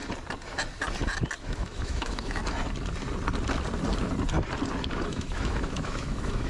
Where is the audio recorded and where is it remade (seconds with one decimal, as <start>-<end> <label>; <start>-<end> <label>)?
0.0-1.4 recorded; 1.4-2.4 remade; 2.4-5.1 recorded; 5.1-6.5 remade